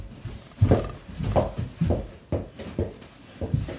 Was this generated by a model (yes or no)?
no